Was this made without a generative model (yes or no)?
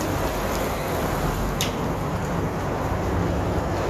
yes